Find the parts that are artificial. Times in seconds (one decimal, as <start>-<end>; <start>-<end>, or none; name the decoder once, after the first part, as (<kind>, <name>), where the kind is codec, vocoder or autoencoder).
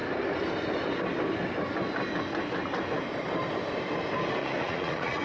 4.4-5.2 (vocoder, Vocos)